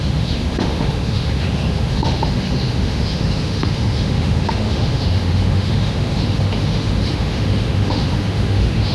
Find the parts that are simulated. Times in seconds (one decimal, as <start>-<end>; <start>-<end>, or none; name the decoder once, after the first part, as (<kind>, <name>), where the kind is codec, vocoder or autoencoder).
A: 0.0-8.9 (autoencoder, DAC-VAE)

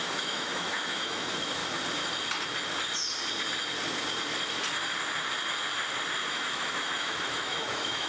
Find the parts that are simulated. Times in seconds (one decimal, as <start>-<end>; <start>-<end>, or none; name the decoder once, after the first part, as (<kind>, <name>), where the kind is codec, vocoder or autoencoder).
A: 0.0-1.6 (autoencoder, DAC-VAE); 6.3-8.1

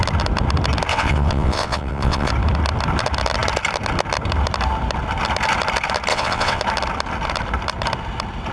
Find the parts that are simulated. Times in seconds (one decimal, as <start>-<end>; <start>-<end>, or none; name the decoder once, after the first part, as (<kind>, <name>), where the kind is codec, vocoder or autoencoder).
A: 0.9-2.3 (vocoder, WaveNeXt); 6.1-6.6

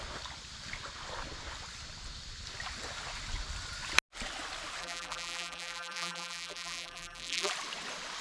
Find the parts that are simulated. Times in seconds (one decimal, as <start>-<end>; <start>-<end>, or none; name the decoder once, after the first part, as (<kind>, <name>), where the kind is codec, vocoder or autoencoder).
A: 4.8-7.5 (vocoder, BigVGAN v2)